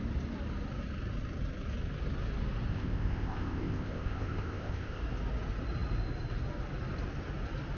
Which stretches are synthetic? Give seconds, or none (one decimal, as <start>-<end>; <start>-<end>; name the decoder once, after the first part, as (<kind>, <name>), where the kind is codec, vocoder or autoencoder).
2.7-5.0 (codec, ZipCodec)